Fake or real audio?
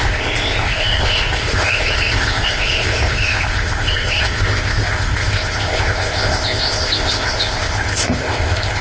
fake